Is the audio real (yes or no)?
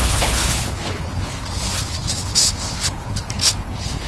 no